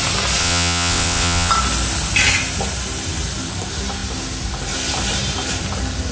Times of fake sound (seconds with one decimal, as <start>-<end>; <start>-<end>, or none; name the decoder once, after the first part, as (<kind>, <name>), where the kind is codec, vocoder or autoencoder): 0.4-1.5 (vocoder, WaveNeXt)